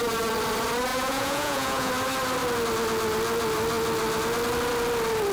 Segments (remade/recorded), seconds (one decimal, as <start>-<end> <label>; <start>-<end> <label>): 0.0-0.9 recorded; 0.9-1.9 remade; 1.9-5.3 recorded